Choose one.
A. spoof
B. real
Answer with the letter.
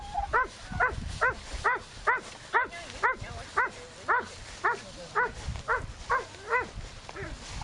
B